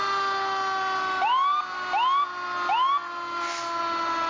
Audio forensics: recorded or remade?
recorded